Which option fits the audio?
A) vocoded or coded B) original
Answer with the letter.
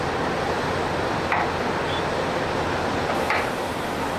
B